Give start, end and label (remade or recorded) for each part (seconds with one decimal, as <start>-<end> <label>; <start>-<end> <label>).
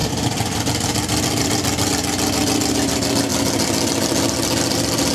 0.0-1.9 remade; 1.9-3.3 recorded; 3.3-5.1 remade